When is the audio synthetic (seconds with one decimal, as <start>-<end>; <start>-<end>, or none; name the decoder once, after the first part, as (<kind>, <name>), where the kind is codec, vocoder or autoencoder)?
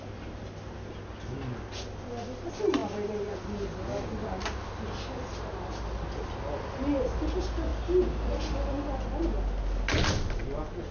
none